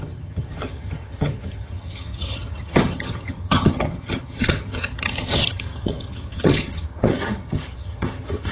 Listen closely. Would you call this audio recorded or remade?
remade